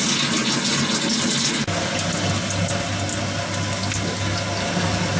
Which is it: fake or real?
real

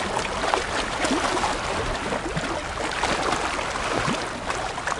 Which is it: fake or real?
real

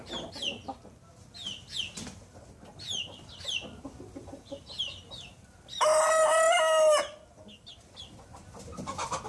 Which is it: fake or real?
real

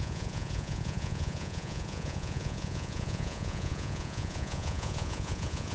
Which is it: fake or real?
fake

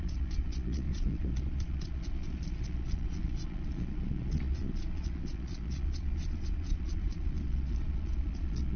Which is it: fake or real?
fake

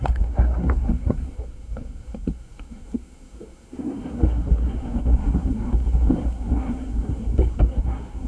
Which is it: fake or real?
fake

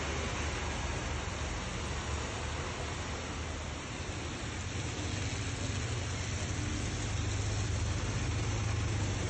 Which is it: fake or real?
real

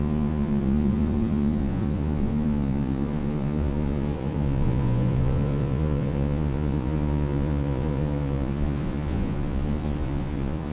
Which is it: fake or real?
fake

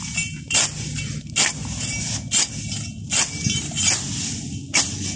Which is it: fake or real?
real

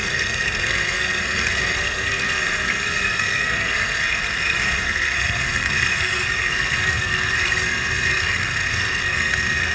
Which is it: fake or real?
fake